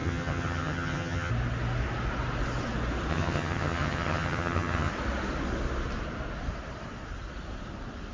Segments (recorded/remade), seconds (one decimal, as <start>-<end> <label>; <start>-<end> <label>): 0.0-1.3 remade; 1.3-3.1 recorded; 3.1-4.9 remade; 4.9-8.1 recorded